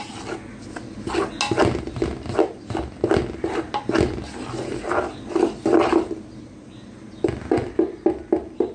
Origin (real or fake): real